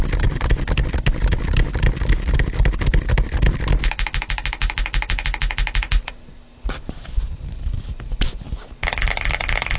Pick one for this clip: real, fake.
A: real